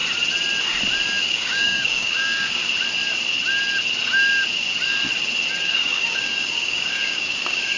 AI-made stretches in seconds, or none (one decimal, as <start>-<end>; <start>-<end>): 1.2-2.6; 5.6-7.8